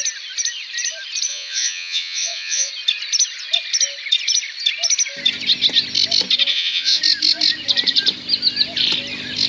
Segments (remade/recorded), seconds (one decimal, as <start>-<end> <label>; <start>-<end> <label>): 0.0-1.3 recorded; 1.3-2.7 remade; 2.7-6.5 recorded; 6.5-7.0 remade; 7.0-9.5 recorded